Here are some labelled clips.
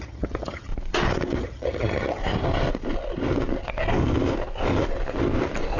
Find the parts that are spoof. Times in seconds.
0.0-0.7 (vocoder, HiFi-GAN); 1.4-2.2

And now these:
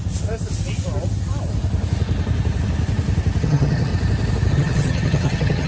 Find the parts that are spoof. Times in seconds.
3.4-3.9 (vocoder, HiFi-GAN); 4.5-5.7